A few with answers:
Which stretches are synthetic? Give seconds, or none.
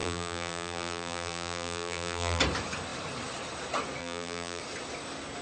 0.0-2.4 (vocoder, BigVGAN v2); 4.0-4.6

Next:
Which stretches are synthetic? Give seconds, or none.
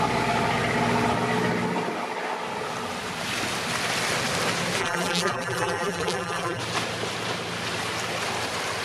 4.8-6.6 (vocoder, BigVGAN v2)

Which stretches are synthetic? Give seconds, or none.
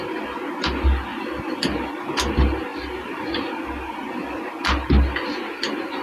1.1-2.3 (vocoder, BigVGAN v2); 2.7-4.5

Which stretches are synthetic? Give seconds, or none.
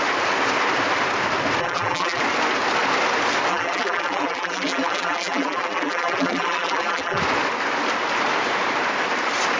1.6-2.2 (vocoder, BigVGAN v2); 3.5-7.2